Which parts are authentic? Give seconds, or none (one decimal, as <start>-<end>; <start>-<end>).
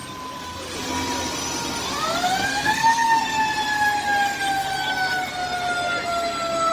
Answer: 0.0-2.5; 3.2-6.7